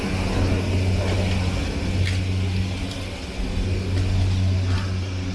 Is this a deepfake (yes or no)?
no